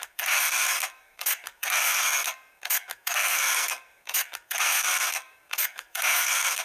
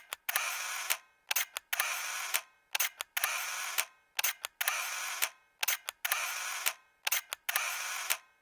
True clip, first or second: second